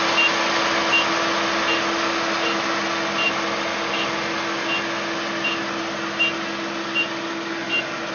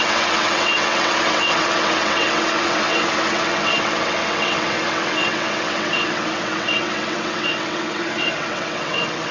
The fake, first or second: second